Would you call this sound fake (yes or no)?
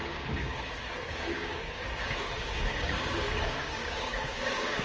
yes